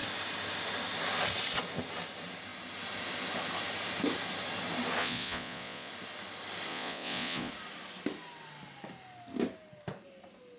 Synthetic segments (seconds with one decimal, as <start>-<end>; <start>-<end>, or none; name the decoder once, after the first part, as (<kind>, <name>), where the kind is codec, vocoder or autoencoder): 5.0-5.9 (vocoder, Vocos); 6.7-7.5